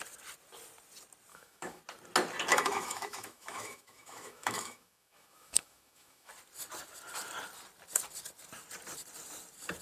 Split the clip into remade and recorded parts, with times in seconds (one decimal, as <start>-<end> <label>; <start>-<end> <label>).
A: 0.0-1.3 recorded; 1.3-1.8 remade; 1.8-2.5 recorded; 2.5-6.3 remade; 6.3-9.8 recorded